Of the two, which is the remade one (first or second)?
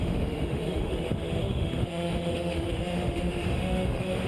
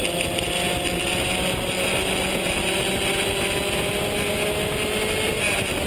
first